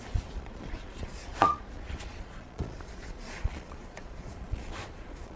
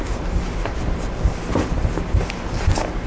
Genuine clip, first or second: second